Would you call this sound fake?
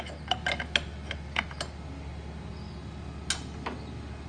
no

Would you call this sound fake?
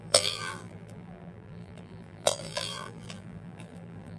yes